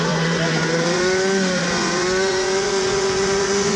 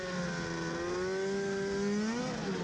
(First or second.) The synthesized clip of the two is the first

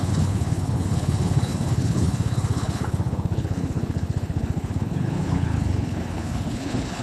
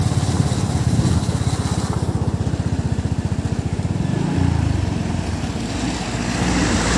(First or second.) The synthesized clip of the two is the first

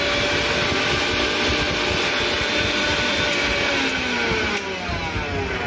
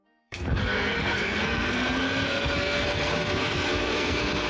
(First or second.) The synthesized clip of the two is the second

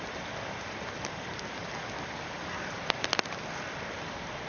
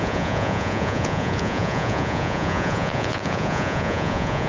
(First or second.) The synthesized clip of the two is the second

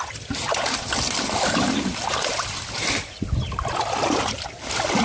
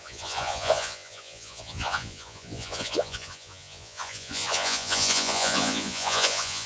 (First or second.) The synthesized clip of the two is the second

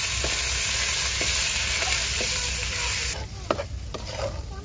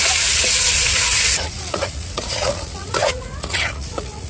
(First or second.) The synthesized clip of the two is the second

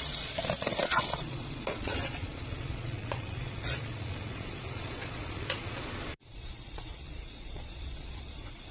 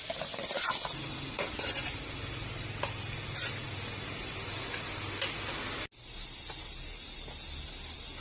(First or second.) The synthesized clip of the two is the first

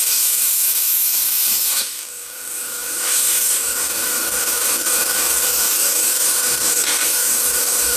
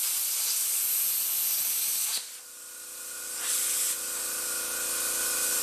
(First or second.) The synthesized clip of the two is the first